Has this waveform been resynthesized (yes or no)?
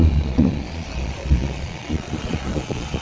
yes